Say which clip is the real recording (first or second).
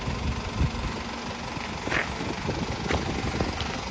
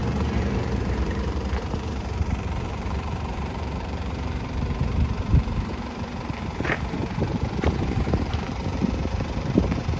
first